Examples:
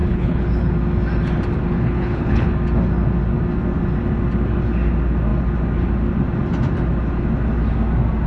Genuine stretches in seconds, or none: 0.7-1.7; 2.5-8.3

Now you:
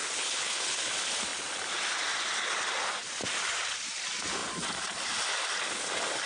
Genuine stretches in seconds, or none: 0.9-6.3

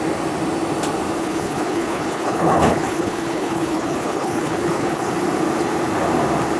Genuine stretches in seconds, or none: 0.0-1.2; 5.1-6.6

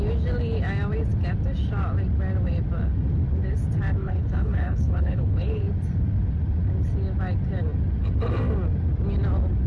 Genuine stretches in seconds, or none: 0.0-4.0; 5.6-9.7

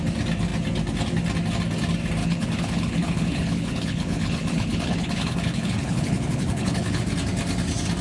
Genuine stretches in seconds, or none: 0.0-2.2; 7.0-8.0